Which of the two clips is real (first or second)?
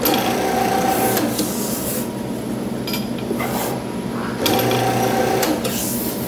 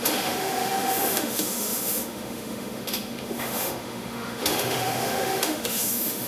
first